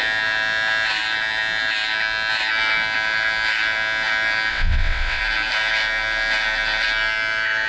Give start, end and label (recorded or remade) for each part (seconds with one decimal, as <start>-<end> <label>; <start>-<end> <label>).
0.0-4.5 recorded; 4.5-5.2 remade; 5.2-7.7 recorded

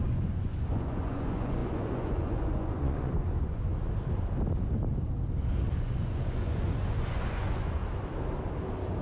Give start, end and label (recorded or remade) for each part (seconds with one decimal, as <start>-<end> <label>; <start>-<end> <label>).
0.0-3.7 remade; 3.7-5.8 recorded; 5.8-7.8 remade; 7.8-9.0 recorded

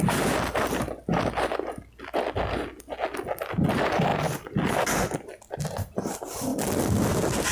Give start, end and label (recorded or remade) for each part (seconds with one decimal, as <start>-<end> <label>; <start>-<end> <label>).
0.0-7.5 recorded

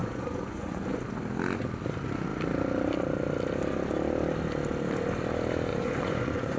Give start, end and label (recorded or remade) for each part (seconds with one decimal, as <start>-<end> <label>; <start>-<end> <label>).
0.0-1.0 remade; 1.0-5.7 recorded; 5.7-6.6 remade

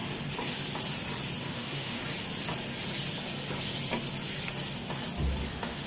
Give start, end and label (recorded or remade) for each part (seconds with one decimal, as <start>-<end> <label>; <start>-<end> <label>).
0.0-1.4 recorded; 1.4-2.0 remade; 2.0-5.5 recorded; 5.5-5.9 remade

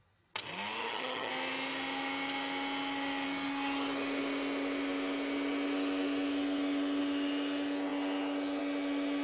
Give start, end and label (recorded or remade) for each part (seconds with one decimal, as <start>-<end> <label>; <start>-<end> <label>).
0.0-0.8 recorded; 0.8-1.3 remade; 1.3-9.2 recorded